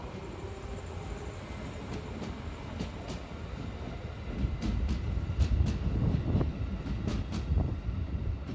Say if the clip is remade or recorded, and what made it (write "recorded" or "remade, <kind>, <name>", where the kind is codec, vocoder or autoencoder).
recorded